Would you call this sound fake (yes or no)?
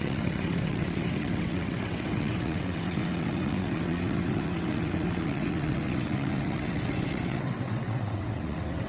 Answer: yes